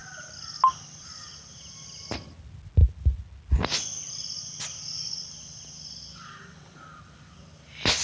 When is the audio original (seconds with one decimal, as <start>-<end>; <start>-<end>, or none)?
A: 0.0-8.0